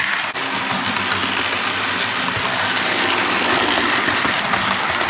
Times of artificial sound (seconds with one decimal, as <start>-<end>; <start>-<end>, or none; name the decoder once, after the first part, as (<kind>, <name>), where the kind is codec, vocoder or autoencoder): none